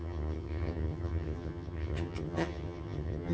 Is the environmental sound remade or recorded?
remade